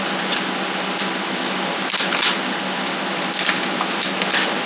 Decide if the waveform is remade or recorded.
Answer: recorded